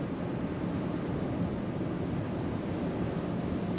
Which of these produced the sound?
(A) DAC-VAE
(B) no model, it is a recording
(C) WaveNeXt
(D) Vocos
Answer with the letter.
B